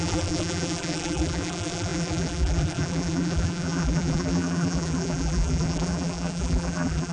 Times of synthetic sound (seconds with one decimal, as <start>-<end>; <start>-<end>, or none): 0.0-7.1

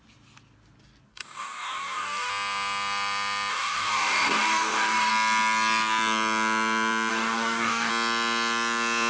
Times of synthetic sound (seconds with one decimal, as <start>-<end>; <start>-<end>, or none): 1.1-2.3; 3.5-5.1; 7.1-7.9